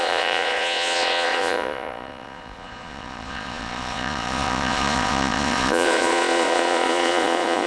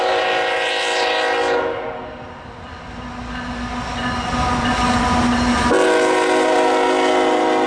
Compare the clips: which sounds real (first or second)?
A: second